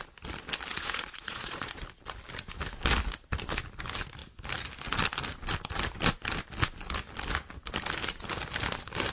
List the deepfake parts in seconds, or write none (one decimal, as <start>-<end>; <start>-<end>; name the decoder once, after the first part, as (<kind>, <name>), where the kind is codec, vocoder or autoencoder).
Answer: 0.7-1.8 (vocoder, Vocos)